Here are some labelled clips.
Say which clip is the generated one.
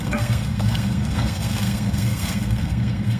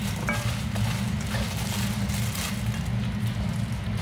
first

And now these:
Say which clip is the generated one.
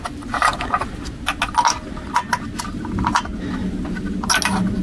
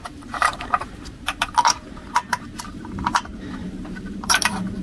second